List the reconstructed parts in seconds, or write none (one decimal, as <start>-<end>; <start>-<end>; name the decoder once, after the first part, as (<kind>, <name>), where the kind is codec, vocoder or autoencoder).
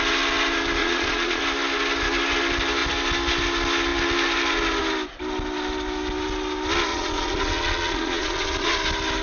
0.8-1.4 (vocoder, Vocos); 6.9-8.7